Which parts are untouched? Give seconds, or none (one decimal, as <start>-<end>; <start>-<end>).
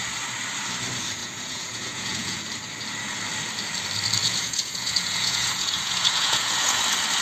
0.0-1.2; 2.4-4.2; 6.8-7.2